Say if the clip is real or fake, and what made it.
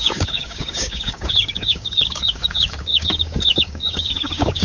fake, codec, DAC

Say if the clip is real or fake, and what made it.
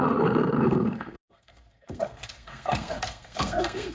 fake, codec, SNAC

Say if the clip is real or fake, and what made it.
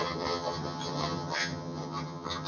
fake, vocoder, HiFi-GAN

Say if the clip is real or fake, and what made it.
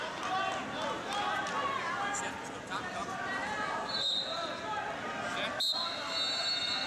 real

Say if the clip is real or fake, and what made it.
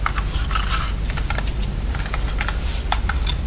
real